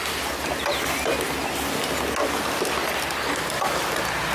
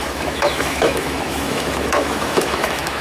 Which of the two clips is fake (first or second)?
second